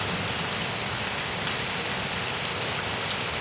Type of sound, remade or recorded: recorded